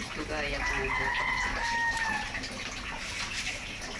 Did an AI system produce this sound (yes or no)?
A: no